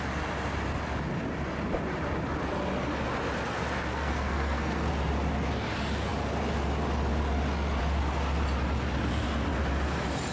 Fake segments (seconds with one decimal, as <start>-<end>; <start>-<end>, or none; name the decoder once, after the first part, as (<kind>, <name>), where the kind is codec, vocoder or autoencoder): 3.9-4.9 (codec, SNAC)